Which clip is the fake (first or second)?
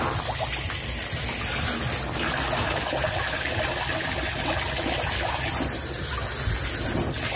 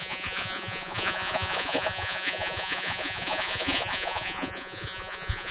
second